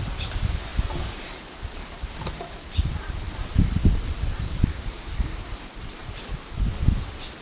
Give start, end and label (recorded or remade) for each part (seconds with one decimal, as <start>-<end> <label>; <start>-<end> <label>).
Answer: 0.0-0.7 recorded; 0.7-5.1 remade; 5.1-6.0 recorded; 6.0-6.6 remade; 6.6-7.4 recorded